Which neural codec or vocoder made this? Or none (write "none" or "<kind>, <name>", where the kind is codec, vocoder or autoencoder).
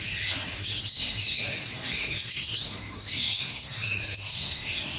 codec, SNAC